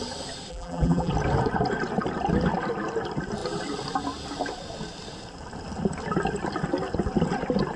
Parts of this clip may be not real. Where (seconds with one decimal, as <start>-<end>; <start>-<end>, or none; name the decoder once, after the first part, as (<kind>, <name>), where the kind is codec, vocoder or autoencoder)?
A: 0.5-1.1 (vocoder, BigVGAN v2)